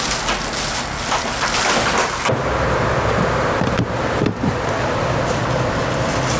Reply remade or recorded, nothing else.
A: recorded